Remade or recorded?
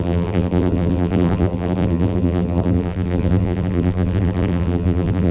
remade